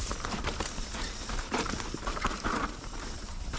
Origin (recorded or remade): remade